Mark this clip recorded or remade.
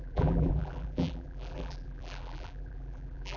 remade